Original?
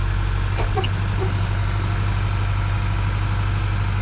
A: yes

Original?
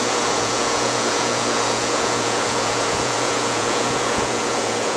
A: no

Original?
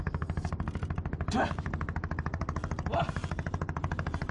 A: yes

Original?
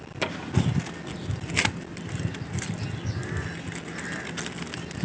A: yes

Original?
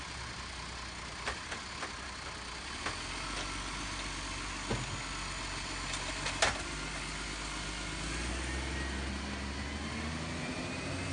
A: yes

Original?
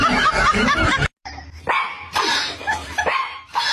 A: yes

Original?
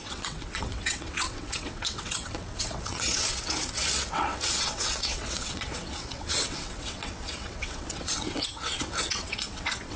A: no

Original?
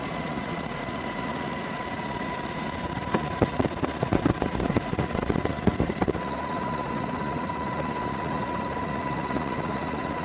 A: no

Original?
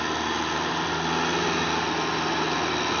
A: yes